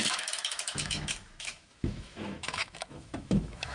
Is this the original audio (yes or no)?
no